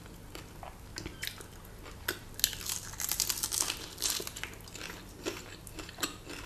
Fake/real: real